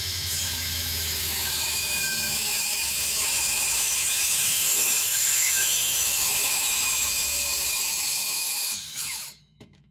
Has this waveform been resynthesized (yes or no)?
yes